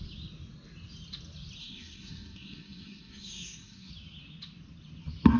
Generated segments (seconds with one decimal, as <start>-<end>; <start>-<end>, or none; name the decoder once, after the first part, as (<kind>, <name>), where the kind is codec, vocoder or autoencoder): 1.6-3.9 (codec, SNAC)